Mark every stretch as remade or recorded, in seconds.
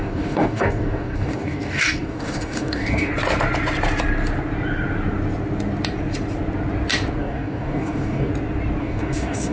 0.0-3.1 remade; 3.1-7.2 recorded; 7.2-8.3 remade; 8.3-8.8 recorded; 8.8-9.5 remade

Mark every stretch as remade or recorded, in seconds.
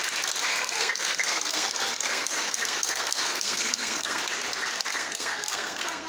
0.0-0.5 recorded; 0.5-4.2 remade; 4.2-4.9 recorded; 4.9-6.1 remade